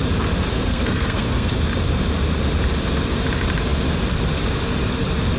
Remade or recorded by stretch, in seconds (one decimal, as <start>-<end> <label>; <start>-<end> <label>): 0.0-0.5 recorded; 0.5-1.5 remade; 1.5-5.4 recorded